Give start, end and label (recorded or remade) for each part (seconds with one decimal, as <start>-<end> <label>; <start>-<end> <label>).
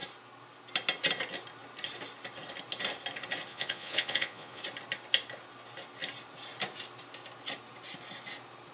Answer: 0.0-3.5 recorded; 3.5-4.6 remade; 4.6-8.7 recorded